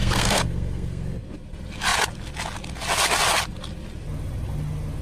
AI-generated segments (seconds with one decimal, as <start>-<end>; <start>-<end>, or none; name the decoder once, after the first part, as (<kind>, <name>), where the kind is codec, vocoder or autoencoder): 0.0-1.2 (codec, SNAC)